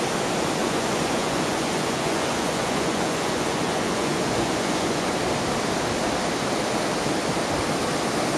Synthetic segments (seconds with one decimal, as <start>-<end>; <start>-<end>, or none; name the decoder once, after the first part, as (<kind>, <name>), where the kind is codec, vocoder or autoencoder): 0.6-5.1 (vocoder, Vocos)